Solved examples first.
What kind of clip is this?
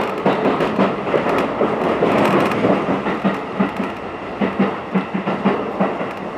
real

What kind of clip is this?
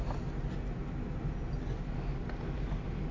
real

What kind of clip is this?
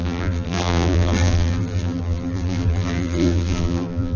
fake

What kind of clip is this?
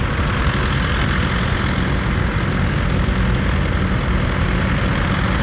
real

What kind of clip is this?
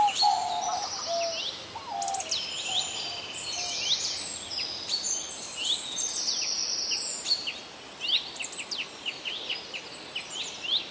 real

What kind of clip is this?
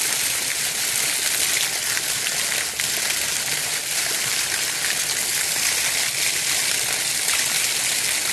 real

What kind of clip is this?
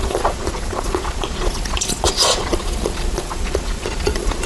fake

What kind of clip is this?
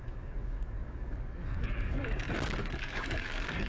fake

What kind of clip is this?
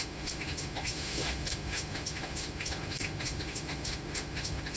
fake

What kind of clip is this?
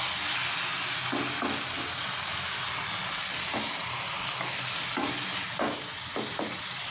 real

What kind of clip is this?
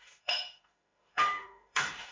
fake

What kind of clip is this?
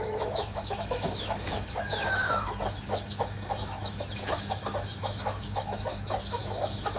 fake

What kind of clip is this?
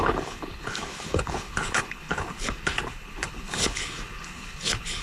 fake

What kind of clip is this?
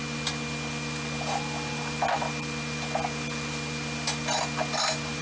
real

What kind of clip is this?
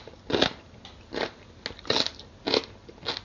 real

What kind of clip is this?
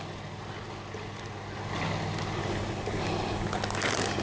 real